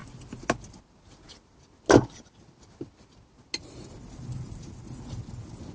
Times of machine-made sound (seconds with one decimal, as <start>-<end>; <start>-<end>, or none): none